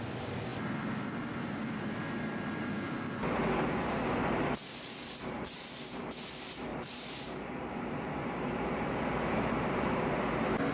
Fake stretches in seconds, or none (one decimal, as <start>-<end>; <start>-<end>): 6.7-10.2